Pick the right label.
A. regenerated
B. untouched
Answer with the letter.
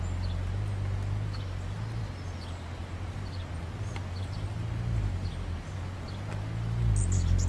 B